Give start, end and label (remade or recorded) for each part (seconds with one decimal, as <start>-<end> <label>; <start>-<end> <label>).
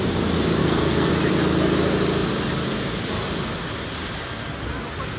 0.0-0.6 recorded; 0.6-1.1 remade; 1.1-5.2 recorded